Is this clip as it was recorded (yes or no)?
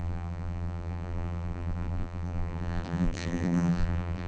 no